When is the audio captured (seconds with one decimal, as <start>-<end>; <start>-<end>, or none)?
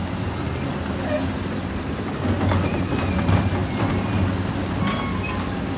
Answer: 0.0-5.8